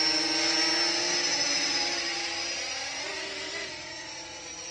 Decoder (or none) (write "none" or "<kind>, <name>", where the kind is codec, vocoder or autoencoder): none